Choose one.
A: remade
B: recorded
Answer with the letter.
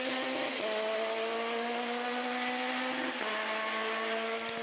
B